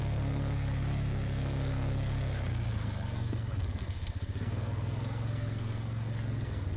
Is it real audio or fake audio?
fake